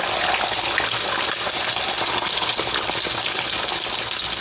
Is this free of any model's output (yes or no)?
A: yes